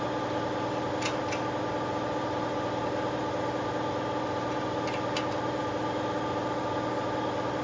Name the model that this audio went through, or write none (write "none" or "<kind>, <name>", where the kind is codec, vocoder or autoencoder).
none